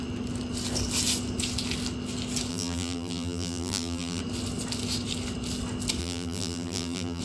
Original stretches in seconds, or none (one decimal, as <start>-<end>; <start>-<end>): 0.0-2.5; 4.2-6.0